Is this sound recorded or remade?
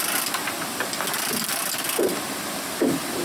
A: recorded